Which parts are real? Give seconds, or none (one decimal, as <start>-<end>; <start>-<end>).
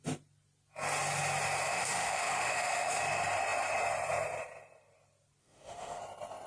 0.0-1.7; 3.0-5.4; 6.0-6.5